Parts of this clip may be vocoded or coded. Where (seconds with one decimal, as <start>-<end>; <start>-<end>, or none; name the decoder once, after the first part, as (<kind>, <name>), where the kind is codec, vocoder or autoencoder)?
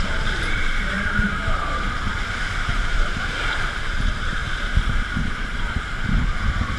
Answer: 0.0-6.8 (vocoder, BigVGAN v2)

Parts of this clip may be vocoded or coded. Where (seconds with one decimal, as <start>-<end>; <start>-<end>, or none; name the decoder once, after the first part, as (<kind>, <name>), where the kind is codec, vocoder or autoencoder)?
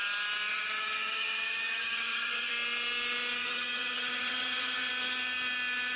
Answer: 0.5-2.5 (vocoder, HiFi-GAN); 3.4-4.9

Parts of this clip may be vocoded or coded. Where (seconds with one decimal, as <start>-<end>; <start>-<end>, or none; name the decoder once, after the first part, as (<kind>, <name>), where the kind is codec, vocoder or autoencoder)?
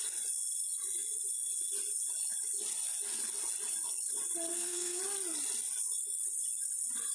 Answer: 4.5-5.0 (codec, SNAC)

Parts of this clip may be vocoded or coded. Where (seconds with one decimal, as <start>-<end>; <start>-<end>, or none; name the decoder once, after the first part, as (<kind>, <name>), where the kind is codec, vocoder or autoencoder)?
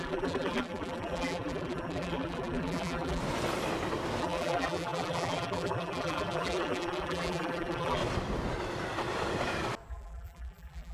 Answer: 0.0-3.2 (vocoder, BigVGAN v2); 4.2-8.0; 9.9-10.9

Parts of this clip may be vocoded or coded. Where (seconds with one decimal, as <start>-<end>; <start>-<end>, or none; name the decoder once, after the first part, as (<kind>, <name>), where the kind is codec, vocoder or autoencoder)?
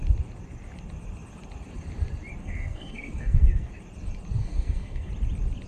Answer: 2.4-3.7 (codec, SNAC); 4.4-5.1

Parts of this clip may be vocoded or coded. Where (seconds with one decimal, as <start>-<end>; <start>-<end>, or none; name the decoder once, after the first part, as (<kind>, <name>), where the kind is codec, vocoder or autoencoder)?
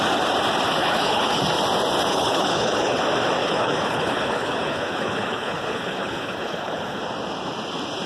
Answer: 0.8-1.4 (codec, HILCodec); 2.1-3.0; 3.4-7.0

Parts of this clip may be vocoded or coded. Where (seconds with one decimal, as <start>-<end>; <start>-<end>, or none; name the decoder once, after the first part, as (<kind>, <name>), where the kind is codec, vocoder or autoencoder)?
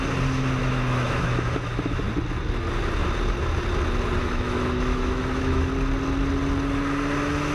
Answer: 0.6-2.0 (autoencoder, DAC-VAE); 4.2-5.7